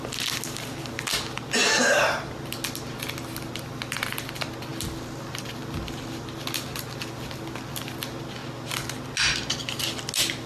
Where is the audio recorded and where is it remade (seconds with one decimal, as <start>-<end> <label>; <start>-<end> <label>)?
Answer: 0.0-1.6 recorded; 1.6-2.3 remade; 2.3-10.5 recorded